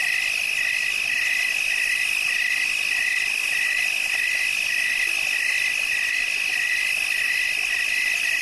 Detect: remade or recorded recorded